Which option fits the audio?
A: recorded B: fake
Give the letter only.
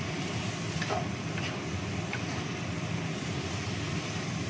A